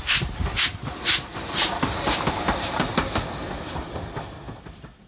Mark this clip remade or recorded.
recorded